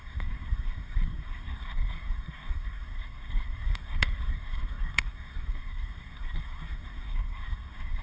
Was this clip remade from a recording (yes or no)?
yes